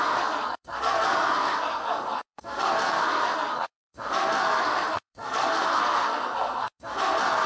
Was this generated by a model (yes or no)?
yes